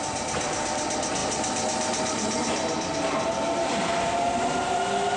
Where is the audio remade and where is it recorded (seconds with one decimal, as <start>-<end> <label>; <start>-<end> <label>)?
0.0-5.2 recorded